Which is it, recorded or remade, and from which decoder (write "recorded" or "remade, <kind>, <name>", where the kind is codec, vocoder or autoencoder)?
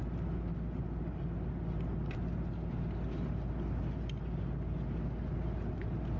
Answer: recorded